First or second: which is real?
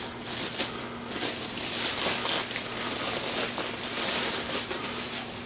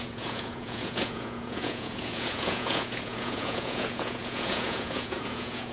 first